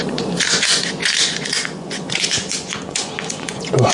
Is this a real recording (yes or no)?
no